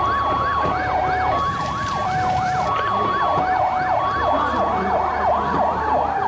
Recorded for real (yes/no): no